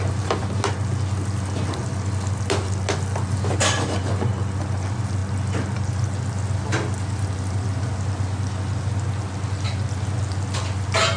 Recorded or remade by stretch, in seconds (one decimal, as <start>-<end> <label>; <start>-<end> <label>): 0.0-11.2 recorded